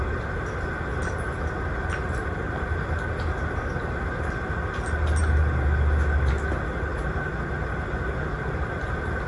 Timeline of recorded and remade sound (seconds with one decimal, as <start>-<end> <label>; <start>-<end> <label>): 0.0-9.3 recorded